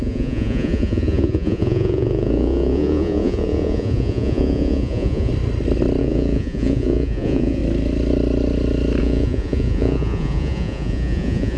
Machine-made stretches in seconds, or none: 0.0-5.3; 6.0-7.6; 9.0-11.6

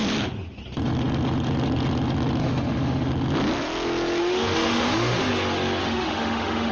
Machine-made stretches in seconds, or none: 2.4-3.1; 4.2-5.3; 5.8-6.7